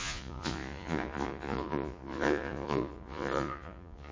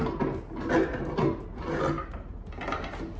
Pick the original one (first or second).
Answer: second